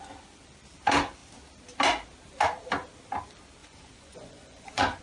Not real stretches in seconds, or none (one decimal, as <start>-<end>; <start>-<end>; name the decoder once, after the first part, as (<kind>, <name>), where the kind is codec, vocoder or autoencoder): 3.6-5.0 (vocoder, Vocos)